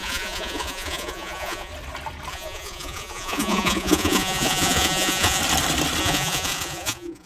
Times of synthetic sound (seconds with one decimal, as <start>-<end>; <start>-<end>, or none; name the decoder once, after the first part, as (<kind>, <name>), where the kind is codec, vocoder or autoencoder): 0.0-1.7 (vocoder, Vocos); 2.3-5.4; 6.0-7.3